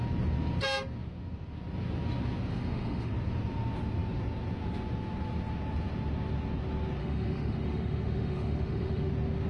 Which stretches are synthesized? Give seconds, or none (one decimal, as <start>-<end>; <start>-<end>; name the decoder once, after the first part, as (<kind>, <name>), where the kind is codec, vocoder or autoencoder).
2.5-3.1 (autoencoder, DAC-VAE); 7.0-9.1